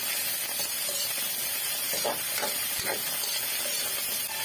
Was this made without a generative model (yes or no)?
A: yes